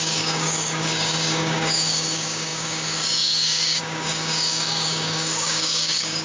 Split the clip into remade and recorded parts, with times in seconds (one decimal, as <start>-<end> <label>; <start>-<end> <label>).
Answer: 0.0-6.2 remade

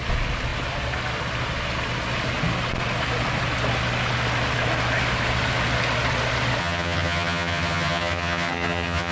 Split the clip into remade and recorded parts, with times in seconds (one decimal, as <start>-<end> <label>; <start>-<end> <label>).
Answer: 0.0-6.6 recorded; 6.6-9.1 remade

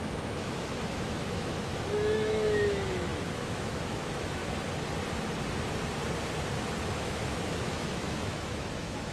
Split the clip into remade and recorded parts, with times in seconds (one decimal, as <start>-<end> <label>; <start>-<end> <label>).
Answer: 0.0-4.4 remade; 4.4-7.0 recorded; 7.0-9.1 remade

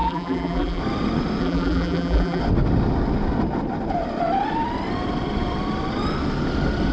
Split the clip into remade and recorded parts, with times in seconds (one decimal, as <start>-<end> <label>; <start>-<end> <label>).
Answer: 0.0-0.8 remade; 0.8-1.4 recorded; 1.4-2.4 remade; 2.4-6.9 recorded